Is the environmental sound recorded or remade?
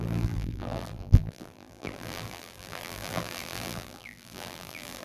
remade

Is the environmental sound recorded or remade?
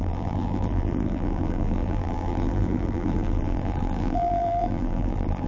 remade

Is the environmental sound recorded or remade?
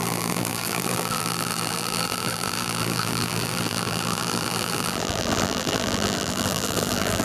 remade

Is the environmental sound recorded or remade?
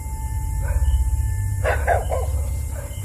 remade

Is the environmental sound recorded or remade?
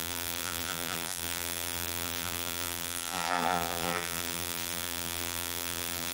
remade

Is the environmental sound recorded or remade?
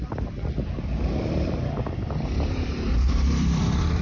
remade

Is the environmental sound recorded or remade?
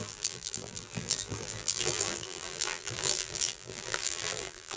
remade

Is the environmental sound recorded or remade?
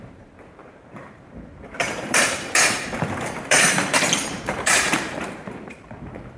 remade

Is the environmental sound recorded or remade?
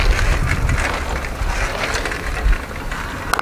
recorded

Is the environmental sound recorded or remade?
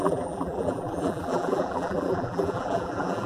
remade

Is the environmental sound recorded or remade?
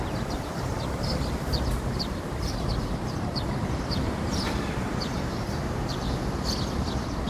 remade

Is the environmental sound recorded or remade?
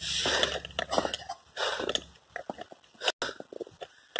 recorded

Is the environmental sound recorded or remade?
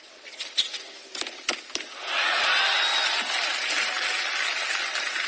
recorded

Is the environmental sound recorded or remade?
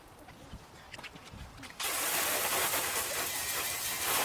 remade